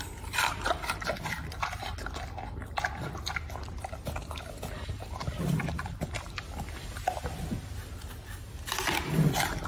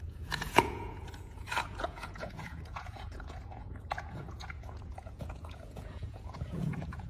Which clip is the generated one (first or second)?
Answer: second